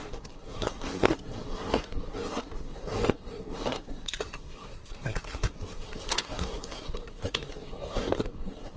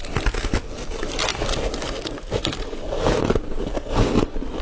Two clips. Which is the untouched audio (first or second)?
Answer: second